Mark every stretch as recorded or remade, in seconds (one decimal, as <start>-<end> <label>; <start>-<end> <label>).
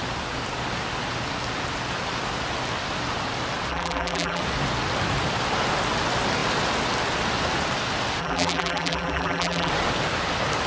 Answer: 0.0-3.7 recorded; 3.7-4.4 remade; 4.4-8.2 recorded; 8.2-9.7 remade; 9.7-10.7 recorded